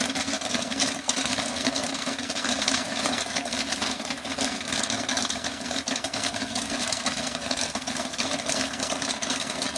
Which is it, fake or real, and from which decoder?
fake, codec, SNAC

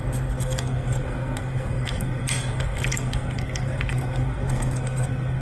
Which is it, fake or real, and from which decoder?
fake, codec, SNAC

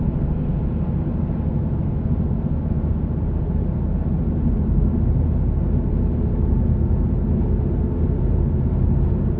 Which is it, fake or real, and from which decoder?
real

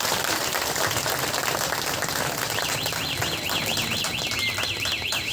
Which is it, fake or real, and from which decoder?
real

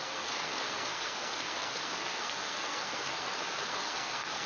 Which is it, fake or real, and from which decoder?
fake, codec, SNAC